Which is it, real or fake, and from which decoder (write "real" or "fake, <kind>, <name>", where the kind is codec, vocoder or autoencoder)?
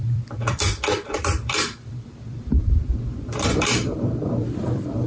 fake, vocoder, BigVGAN v2